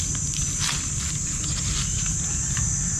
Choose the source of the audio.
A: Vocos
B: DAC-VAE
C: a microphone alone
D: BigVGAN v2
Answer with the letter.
C